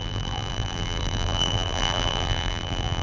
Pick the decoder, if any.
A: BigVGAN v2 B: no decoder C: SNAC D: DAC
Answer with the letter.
A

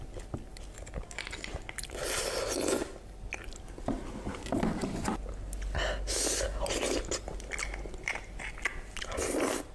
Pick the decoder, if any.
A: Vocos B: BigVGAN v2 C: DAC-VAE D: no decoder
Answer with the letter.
D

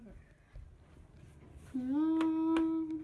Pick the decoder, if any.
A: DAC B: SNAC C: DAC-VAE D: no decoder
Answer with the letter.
D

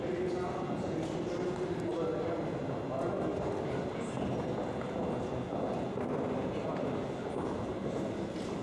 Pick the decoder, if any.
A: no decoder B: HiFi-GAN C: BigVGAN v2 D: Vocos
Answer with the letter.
A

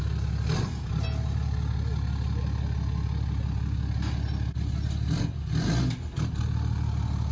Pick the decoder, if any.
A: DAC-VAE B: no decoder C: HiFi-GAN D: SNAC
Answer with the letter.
B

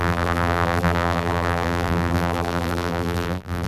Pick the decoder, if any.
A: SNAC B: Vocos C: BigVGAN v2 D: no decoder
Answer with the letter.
C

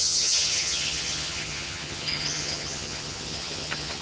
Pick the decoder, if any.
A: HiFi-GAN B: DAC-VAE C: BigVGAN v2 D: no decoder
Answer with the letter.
A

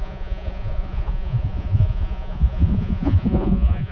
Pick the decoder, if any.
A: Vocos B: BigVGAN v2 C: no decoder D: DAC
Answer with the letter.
A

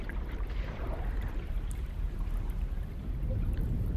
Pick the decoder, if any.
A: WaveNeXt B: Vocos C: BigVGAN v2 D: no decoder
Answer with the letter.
C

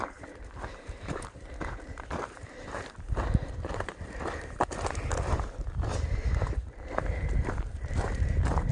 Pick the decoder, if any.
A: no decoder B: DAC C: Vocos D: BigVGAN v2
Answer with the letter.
D